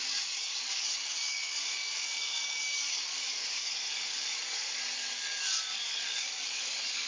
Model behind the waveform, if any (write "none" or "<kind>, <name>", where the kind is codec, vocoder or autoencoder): codec, DAC